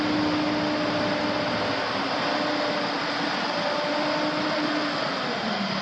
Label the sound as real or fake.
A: real